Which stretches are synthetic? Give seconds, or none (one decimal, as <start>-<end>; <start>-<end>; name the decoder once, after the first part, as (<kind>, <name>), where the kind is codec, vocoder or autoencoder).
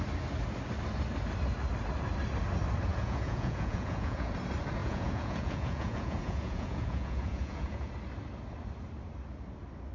2.9-4.3 (vocoder, Vocos); 4.8-7.9